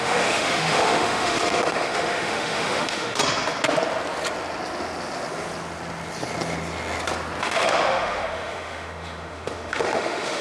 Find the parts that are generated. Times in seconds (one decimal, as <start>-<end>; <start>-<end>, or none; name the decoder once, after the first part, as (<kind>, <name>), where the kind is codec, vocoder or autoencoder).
0.0-3.2 (autoencoder, DAC-VAE); 7.4-10.4